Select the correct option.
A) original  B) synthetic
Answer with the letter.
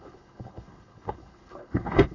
B